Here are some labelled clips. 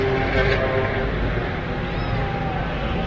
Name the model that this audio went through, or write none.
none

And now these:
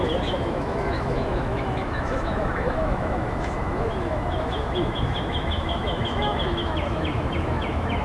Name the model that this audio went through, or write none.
autoencoder, DAC-VAE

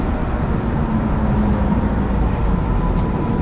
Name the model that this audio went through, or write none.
none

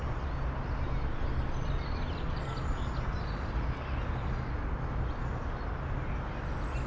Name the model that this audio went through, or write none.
none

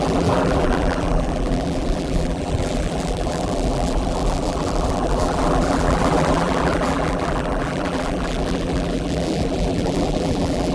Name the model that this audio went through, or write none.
vocoder, BigVGAN v2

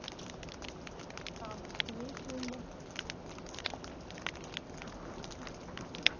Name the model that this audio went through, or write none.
none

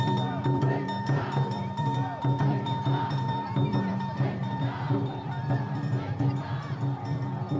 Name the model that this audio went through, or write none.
vocoder, BigVGAN v2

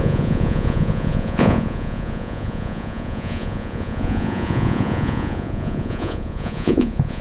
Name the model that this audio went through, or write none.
vocoder, Vocos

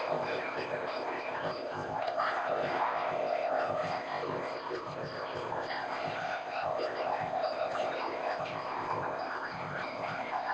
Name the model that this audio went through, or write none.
codec, ZipCodec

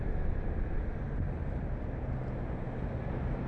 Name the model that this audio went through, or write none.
none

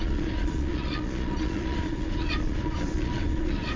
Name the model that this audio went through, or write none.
vocoder, Vocos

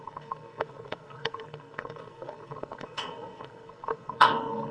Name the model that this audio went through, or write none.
codec, SNAC